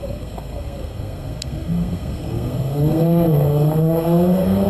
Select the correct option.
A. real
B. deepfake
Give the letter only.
B